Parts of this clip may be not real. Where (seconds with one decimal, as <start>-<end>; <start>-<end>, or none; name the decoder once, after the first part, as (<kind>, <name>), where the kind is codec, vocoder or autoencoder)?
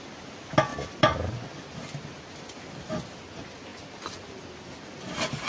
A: none